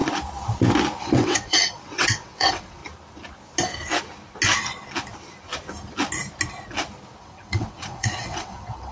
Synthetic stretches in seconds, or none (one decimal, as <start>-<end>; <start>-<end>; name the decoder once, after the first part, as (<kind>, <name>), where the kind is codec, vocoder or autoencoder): 1.0-2.8 (vocoder, WaveNeXt); 7.2-8.9